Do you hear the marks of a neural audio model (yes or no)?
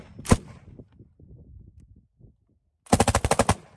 no